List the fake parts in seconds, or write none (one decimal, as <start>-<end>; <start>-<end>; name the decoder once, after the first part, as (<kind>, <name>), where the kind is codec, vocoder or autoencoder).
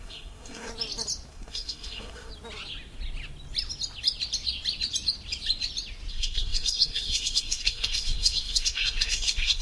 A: 0.0-0.7 (codec, SNAC); 1.3-2.3; 6.1-9.6